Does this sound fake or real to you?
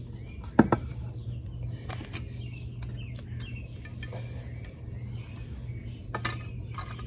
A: real